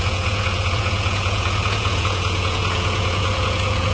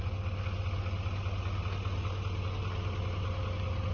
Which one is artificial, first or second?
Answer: first